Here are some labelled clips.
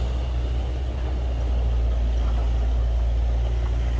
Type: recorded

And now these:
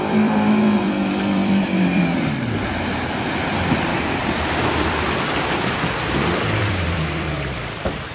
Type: remade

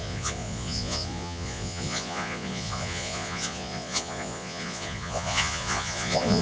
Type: remade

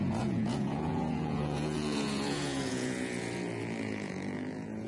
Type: remade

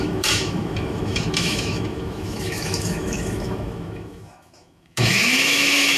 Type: remade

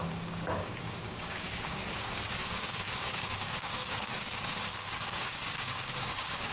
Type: remade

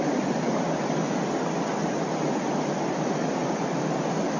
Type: recorded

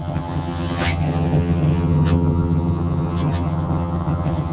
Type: remade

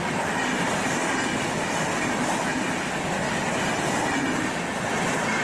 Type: recorded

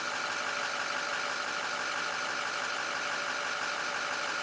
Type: recorded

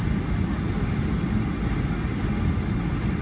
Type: recorded